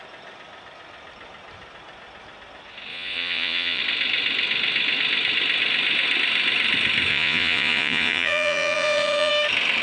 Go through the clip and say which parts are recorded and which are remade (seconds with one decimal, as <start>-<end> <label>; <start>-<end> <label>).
0.0-2.9 recorded; 2.9-3.8 remade; 3.8-7.1 recorded; 7.1-9.3 remade; 9.3-9.8 recorded